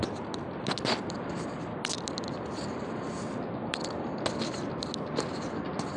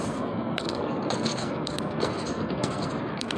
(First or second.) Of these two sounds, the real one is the first